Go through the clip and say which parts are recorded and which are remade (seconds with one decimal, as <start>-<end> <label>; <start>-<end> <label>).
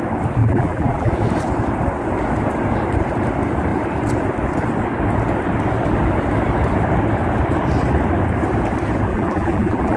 0.0-0.4 recorded; 0.4-1.1 remade; 1.1-9.1 recorded; 9.1-10.0 remade